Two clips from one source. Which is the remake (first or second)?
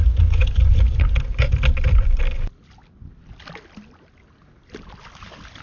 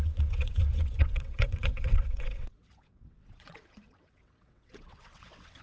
second